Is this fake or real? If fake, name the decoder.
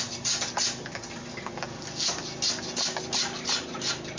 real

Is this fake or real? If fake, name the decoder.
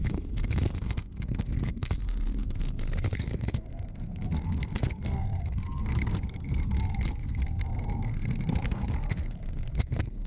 fake, codec, SNAC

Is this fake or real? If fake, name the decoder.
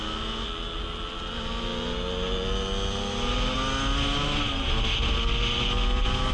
real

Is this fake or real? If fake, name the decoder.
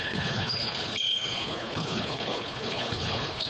fake, codec, HILCodec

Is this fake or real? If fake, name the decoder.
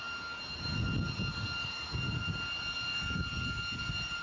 real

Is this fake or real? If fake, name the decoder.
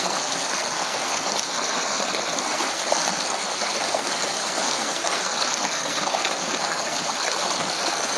fake, codec, SNAC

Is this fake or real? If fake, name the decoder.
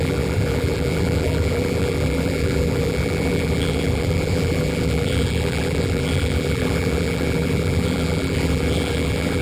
fake, vocoder, BigVGAN v2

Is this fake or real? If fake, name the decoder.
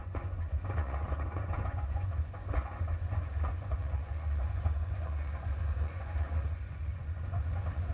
fake, vocoder, Vocos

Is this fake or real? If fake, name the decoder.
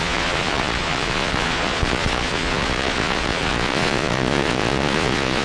fake, vocoder, Vocos